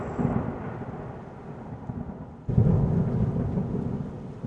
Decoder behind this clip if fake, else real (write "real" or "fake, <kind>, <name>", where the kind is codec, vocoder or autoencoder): real